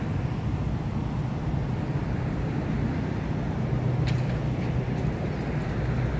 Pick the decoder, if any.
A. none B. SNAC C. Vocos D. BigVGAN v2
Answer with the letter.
A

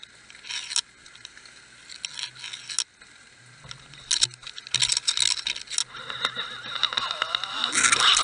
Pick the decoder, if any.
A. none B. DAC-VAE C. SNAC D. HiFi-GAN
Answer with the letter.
A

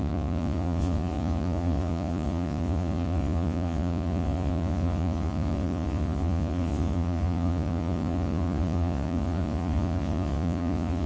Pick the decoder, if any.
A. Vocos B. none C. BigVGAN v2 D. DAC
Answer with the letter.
A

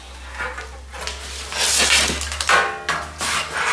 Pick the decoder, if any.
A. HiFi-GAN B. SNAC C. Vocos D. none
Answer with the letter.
D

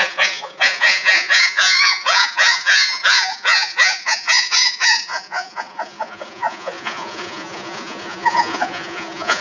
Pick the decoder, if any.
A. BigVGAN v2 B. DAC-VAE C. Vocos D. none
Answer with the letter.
C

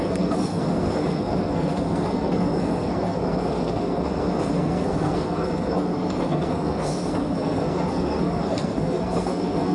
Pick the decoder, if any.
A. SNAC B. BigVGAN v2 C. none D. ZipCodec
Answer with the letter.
A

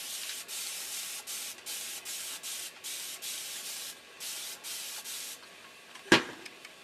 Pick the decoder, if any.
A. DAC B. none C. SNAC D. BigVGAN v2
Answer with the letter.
B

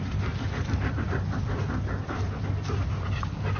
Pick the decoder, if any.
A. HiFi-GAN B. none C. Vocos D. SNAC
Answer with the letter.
B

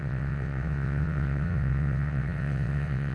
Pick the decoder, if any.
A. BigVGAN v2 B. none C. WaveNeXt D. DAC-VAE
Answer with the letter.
C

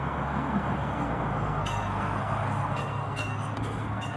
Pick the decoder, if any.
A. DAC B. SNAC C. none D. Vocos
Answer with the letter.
B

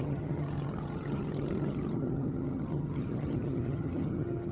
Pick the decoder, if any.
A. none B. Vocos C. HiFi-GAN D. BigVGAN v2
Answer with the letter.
C